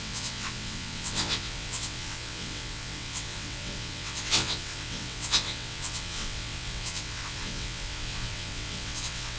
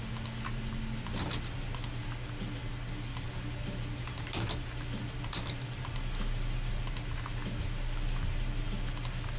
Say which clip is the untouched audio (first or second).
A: second